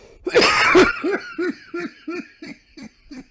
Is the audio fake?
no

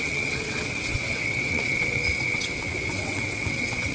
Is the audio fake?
yes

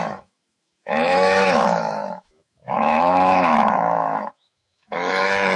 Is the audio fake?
yes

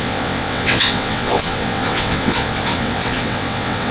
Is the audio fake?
yes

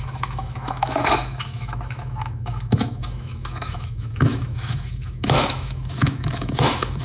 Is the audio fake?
yes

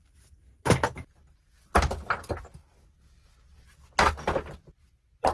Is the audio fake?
no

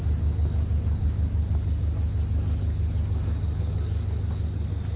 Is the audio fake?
no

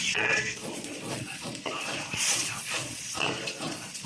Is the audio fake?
yes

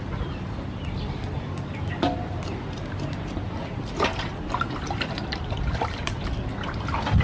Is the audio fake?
no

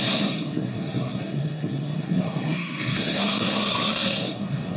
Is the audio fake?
yes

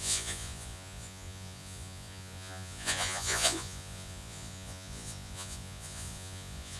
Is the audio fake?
yes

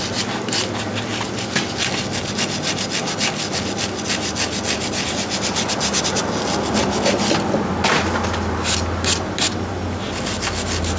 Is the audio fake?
no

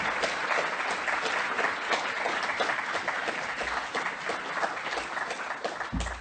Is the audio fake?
no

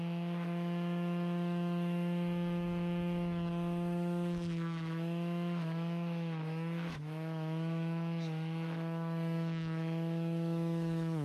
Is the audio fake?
yes